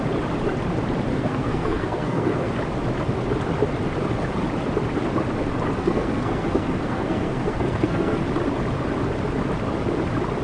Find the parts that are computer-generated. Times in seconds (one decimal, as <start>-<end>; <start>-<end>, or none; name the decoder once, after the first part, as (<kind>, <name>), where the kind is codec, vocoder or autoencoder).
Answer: 1.1-2.5 (codec, SNAC); 5.8-8.2